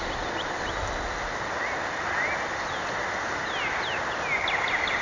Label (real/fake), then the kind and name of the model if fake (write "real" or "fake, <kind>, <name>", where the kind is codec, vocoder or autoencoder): real